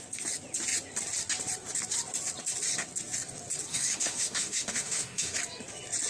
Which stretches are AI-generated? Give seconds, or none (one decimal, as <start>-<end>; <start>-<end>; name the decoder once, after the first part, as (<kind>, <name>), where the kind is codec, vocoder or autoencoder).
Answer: 3.7-5.4 (autoencoder, DAC-VAE)